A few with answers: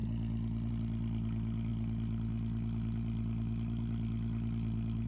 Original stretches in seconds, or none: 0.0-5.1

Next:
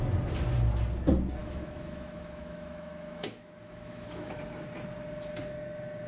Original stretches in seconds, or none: 0.0-1.4; 4.4-6.1